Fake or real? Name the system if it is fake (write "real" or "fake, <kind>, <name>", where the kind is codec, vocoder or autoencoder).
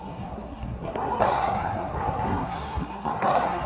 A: fake, codec, SNAC